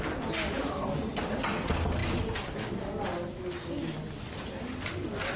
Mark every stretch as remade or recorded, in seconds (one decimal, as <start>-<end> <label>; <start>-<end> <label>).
0.0-5.4 recorded